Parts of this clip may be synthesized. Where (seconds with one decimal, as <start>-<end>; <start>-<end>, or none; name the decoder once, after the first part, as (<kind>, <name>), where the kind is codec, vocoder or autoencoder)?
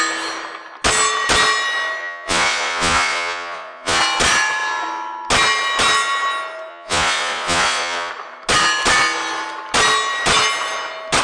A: 2.0-4.0 (vocoder, Vocos); 6.7-8.1